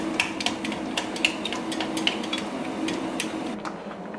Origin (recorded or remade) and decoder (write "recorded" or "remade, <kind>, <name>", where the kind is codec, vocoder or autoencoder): recorded